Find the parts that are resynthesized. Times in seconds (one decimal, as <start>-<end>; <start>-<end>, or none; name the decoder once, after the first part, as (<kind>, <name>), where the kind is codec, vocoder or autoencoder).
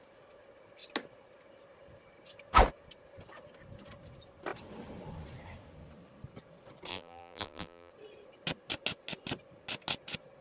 6.9-7.9 (vocoder, BigVGAN v2)